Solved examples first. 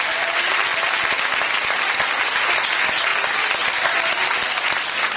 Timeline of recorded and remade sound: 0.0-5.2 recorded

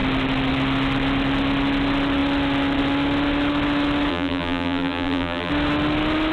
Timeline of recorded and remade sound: 0.0-4.1 recorded; 4.1-5.5 remade; 5.5-6.3 recorded